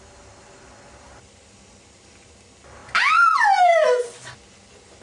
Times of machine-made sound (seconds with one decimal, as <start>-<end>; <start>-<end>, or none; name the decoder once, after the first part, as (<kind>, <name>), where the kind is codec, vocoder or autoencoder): none